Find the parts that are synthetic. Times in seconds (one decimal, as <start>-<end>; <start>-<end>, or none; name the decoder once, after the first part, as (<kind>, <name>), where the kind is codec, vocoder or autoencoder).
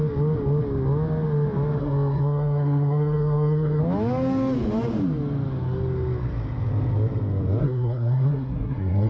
1.8-3.8 (codec, SNAC); 7.6-9.1